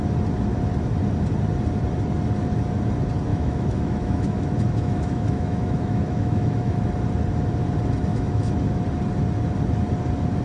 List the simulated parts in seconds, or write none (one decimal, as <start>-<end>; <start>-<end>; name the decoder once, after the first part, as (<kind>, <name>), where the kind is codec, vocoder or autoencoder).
3.3-6.9 (autoencoder, DAC-VAE); 8.1-8.8